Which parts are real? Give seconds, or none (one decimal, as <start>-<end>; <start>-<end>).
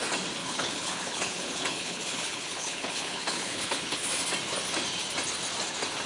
0.0-0.4; 4.1-6.1